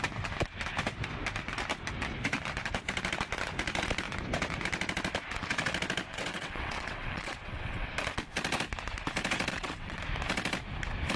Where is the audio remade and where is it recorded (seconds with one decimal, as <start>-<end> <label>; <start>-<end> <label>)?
0.0-6.1 recorded; 6.1-7.9 remade; 7.9-9.5 recorded; 9.5-10.0 remade; 10.0-11.2 recorded